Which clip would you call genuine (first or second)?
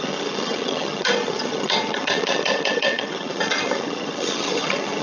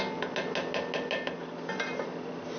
second